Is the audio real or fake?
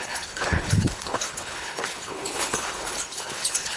fake